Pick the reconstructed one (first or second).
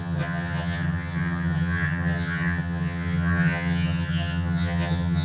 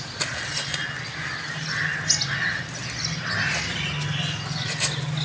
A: first